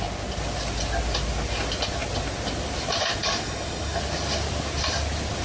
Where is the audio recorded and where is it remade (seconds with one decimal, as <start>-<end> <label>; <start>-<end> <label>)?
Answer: 0.0-3.2 recorded; 3.2-4.0 remade; 4.0-5.4 recorded